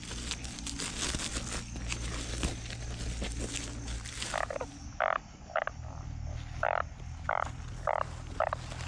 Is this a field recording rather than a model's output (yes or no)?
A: yes